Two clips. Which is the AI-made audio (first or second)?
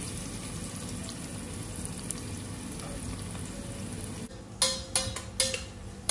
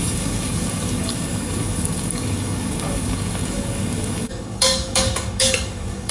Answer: second